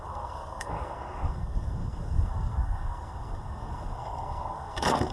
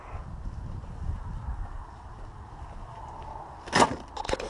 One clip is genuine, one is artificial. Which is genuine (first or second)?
second